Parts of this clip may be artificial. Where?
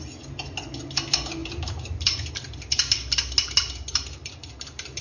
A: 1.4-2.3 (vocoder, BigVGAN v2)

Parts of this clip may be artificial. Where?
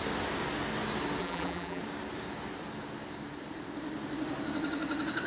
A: 1.2-1.8 (vocoder, BigVGAN v2)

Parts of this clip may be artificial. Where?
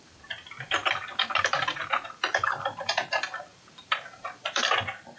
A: 0.0-5.2 (vocoder, BigVGAN v2)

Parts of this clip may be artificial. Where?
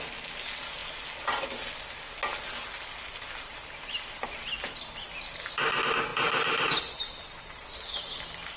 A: 6.1-6.8 (vocoder, BigVGAN v2)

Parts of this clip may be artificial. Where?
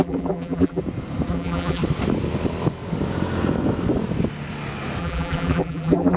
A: 0.0-0.8 (vocoder, BigVGAN v2); 1.3-1.8; 5.0-6.2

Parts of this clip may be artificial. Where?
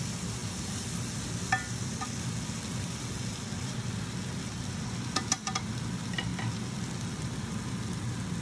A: none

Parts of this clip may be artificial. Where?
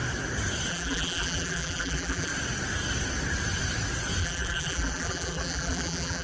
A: 0.7-2.3 (vocoder, BigVGAN v2); 4.2-6.2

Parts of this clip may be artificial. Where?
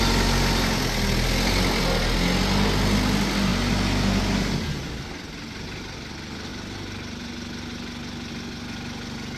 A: none